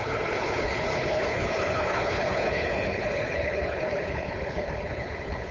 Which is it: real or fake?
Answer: fake